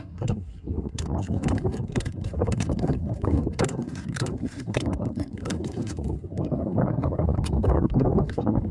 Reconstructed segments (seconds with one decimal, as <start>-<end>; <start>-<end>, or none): 0.0-8.7